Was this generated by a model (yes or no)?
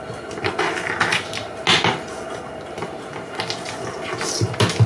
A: no